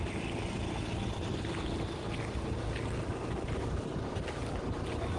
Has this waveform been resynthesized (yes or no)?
no